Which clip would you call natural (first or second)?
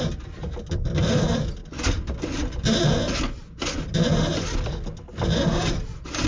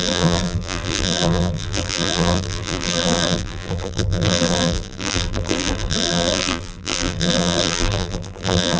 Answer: first